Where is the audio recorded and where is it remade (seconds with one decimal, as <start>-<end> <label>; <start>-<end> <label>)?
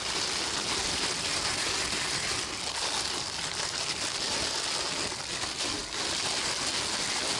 0.0-7.4 recorded